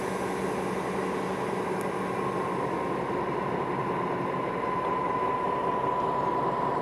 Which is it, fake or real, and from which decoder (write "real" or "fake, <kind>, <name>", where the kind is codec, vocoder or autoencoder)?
real